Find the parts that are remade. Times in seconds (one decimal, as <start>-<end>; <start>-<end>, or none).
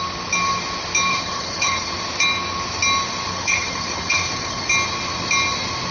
1.1-1.9; 3.3-4.7